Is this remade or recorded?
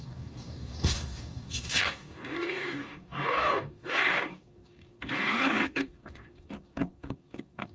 remade